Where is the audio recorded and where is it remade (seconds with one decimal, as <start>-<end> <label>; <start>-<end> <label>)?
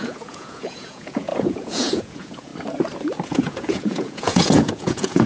0.0-2.5 remade; 2.5-3.3 recorded; 3.3-5.3 remade